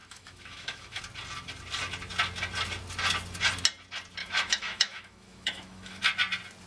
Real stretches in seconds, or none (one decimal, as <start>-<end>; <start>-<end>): 1.0-4.2; 6.0-6.7